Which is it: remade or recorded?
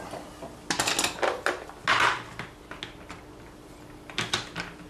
recorded